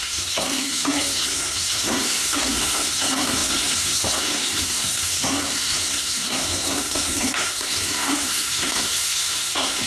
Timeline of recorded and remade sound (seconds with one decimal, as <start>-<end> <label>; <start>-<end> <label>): 0.0-9.9 remade